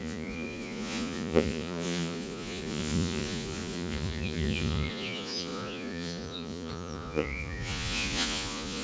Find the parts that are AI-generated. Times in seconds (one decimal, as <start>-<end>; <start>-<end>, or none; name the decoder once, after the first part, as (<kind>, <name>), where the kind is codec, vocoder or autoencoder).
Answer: 0.0-8.8 (vocoder, Vocos)